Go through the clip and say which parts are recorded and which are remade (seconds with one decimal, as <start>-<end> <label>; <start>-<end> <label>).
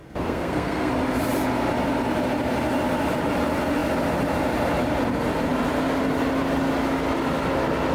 0.0-0.9 remade; 0.9-7.9 recorded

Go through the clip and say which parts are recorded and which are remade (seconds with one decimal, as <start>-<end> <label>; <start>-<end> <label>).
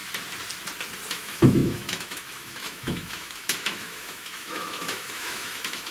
0.0-1.1 recorded; 1.1-5.9 remade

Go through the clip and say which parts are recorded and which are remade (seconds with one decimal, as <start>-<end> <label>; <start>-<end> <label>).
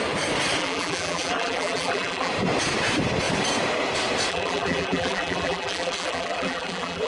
0.0-0.6 recorded; 0.6-2.3 remade; 2.3-4.3 recorded; 4.3-7.1 remade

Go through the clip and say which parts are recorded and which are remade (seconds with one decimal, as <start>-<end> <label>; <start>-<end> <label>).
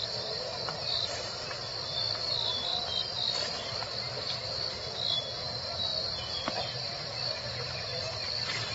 0.0-8.7 recorded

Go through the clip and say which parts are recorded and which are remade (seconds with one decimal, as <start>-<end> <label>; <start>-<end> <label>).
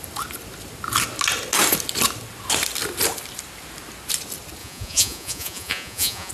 0.0-4.6 recorded; 4.6-6.3 remade